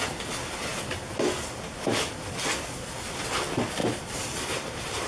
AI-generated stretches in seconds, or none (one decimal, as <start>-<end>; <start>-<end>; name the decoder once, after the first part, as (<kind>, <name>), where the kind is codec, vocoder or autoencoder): 3.8-5.1 (vocoder, BigVGAN v2)